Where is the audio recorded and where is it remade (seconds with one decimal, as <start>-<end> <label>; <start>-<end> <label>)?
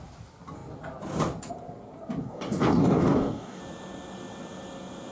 0.0-2.2 recorded; 2.2-3.6 remade; 3.6-5.1 recorded